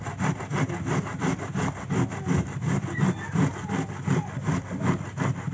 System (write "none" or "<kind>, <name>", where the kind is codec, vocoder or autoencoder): none